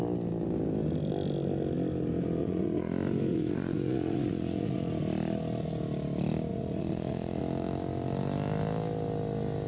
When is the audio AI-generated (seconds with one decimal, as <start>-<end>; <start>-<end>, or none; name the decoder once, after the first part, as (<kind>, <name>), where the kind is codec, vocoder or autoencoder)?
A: 2.4-2.9 (vocoder, Vocos); 3.3-4.9; 6.5-7.4